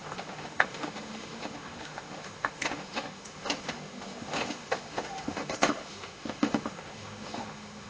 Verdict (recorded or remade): remade